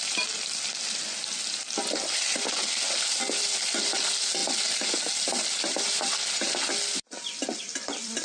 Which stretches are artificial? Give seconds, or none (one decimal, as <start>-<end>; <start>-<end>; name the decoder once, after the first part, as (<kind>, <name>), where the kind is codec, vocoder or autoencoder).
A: none